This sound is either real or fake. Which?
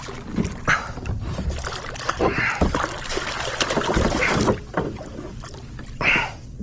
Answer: fake